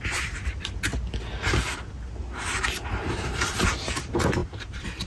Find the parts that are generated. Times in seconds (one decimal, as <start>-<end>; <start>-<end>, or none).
0.0-0.9; 3.1-5.1